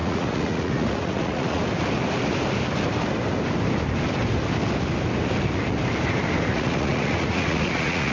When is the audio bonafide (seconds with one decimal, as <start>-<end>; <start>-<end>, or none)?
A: 1.6-6.5